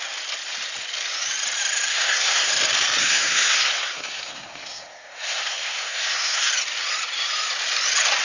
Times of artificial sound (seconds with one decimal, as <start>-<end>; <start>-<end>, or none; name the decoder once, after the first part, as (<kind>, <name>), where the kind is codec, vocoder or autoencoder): 1.9-2.5 (codec, SNAC); 3.0-6.5